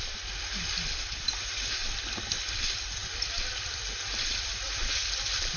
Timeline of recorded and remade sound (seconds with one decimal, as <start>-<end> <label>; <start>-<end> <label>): 0.0-5.6 recorded